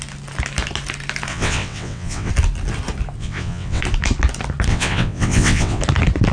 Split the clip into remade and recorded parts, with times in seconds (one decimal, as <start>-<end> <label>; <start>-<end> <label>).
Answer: 0.0-1.3 recorded; 1.3-2.3 remade; 2.3-3.2 recorded; 3.2-3.8 remade; 3.8-4.7 recorded; 4.7-5.8 remade; 5.8-6.3 recorded

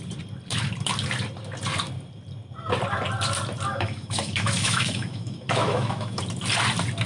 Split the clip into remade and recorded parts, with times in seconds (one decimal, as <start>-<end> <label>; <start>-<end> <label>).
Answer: 0.0-3.7 recorded; 3.7-6.2 remade; 6.2-7.1 recorded

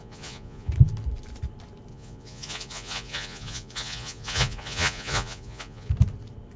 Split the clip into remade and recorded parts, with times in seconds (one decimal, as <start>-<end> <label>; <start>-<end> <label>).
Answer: 0.0-0.7 remade; 0.7-1.9 recorded; 1.9-5.9 remade; 5.9-6.6 recorded

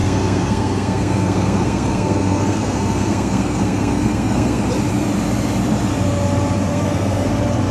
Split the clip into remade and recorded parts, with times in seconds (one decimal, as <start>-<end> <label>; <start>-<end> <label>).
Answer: 0.0-4.6 remade; 4.6-6.7 recorded; 6.7-7.3 remade; 7.3-7.7 recorded

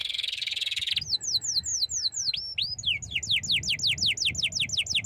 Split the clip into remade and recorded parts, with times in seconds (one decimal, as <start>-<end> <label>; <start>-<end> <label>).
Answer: 0.0-0.9 remade; 0.9-5.1 recorded

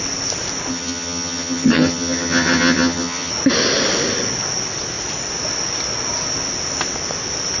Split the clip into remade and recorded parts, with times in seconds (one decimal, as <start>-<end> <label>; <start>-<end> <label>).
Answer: 0.0-0.7 recorded; 0.7-3.3 remade; 3.3-7.6 recorded